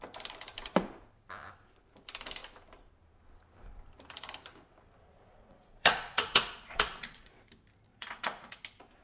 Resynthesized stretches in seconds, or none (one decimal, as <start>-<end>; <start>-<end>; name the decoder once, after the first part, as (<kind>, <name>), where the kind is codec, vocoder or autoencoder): 5.3-7.3 (vocoder, Vocos); 7.9-8.6